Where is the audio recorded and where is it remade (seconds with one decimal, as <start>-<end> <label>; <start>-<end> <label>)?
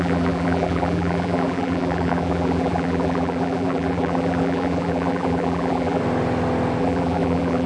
0.0-6.0 remade; 6.0-6.8 recorded; 6.8-7.7 remade